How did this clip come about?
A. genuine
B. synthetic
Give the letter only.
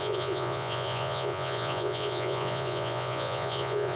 B